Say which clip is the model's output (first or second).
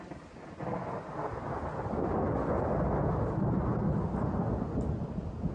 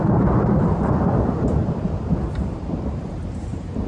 second